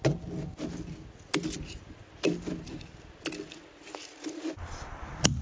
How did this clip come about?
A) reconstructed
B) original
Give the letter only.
B